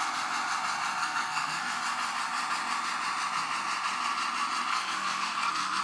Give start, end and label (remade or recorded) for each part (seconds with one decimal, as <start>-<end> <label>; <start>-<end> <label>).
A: 0.0-1.0 recorded; 1.0-1.8 remade; 1.8-4.7 recorded; 4.7-5.8 remade